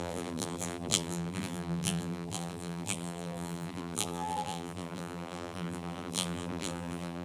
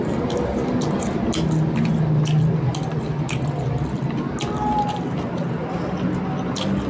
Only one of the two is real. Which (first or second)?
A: second